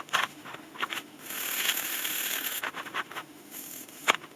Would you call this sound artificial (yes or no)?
yes